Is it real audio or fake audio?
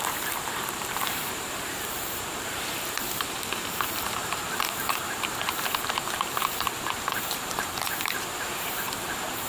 fake